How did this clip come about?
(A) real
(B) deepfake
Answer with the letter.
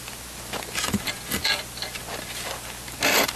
A